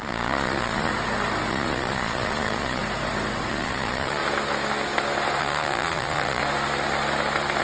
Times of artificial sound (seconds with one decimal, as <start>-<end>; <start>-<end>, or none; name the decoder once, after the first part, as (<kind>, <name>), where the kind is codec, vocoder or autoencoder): 0.0-0.9 (vocoder, Vocos); 1.5-2.8; 3.5-4.2; 5.4-6.4